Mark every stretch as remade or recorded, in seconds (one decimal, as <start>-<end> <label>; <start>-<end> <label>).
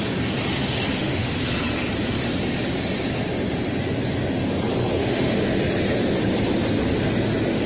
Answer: 0.0-0.9 recorded; 0.9-1.4 remade; 1.4-5.0 recorded; 5.0-5.6 remade; 5.6-7.7 recorded